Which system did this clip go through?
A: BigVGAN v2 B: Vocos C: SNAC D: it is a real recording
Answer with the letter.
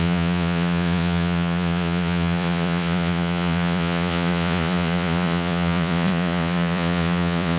B